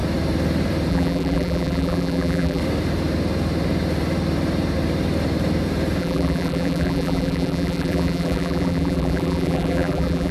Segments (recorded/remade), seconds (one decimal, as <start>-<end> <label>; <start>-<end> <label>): 0.0-0.9 recorded; 0.9-2.6 remade; 2.6-6.0 recorded; 6.0-10.3 remade